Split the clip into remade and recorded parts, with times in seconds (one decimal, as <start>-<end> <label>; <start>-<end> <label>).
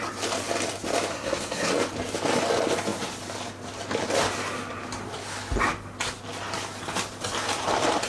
0.0-1.1 recorded; 1.1-1.7 remade; 1.7-8.1 recorded